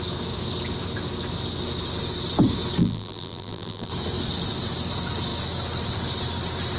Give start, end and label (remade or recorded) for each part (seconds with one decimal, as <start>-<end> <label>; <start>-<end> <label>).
0.0-2.8 recorded; 2.8-3.9 remade; 3.9-6.8 recorded